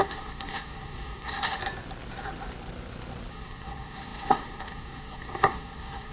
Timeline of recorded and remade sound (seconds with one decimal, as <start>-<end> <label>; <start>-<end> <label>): 0.0-1.6 remade; 1.6-3.3 recorded; 3.3-6.1 remade